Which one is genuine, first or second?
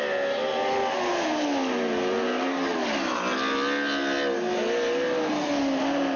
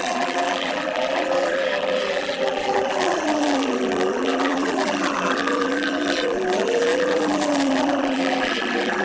first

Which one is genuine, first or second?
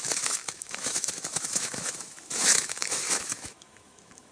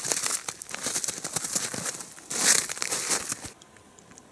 second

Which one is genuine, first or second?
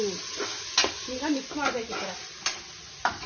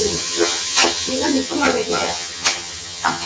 first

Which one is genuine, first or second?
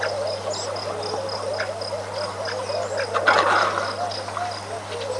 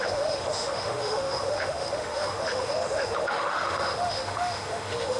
first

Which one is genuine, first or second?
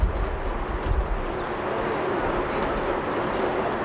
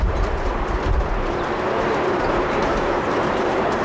first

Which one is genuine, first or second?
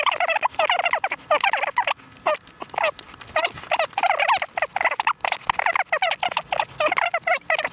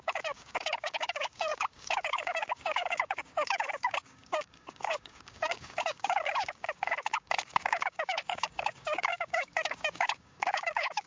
first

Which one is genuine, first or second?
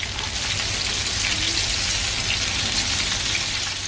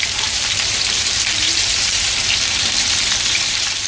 first